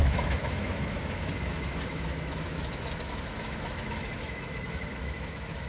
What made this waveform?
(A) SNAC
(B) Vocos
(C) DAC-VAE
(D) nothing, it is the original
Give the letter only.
C